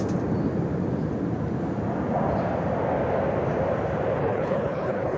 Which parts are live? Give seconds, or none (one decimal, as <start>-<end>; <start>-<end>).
0.0-4.2